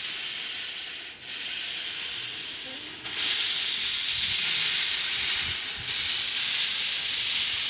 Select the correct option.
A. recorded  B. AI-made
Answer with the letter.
A